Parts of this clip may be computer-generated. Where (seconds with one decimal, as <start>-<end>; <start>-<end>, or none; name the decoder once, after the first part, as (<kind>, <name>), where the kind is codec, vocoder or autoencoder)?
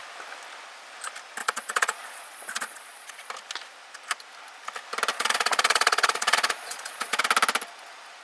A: 1.4-3.3 (vocoder, Vocos); 5.1-7.2